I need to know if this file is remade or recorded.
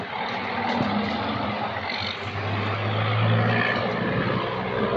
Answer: recorded